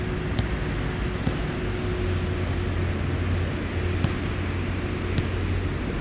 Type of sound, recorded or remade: recorded